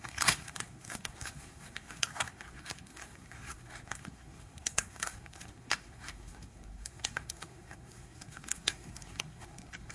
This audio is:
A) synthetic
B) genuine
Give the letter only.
A